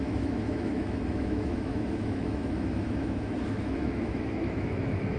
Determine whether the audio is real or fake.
fake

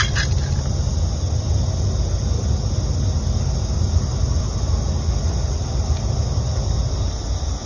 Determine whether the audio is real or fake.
real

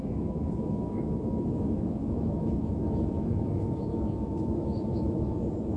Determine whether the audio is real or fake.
fake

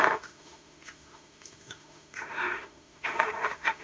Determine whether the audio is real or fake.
fake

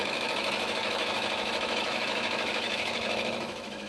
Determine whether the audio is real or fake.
fake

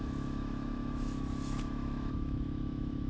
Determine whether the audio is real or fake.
fake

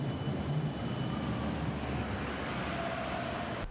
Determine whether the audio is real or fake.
real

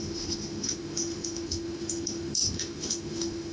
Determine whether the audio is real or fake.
fake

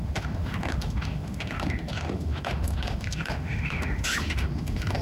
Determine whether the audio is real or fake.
fake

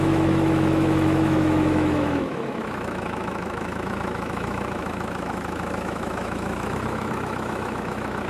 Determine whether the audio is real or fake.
fake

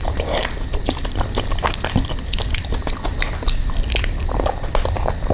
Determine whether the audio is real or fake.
real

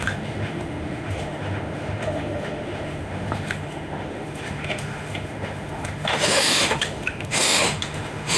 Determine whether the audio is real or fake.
fake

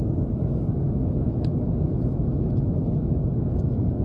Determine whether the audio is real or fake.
fake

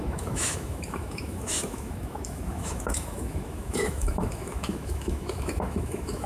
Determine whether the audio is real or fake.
fake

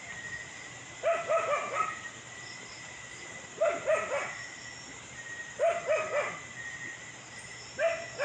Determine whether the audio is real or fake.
real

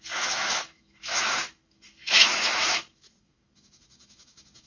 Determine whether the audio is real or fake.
fake